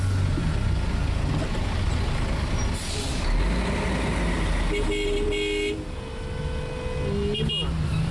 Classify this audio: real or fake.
real